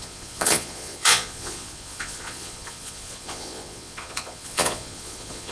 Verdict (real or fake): fake